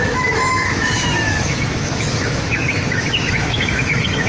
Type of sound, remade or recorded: remade